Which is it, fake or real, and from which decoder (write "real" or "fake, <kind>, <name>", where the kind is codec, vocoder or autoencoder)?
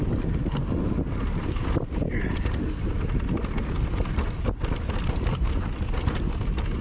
real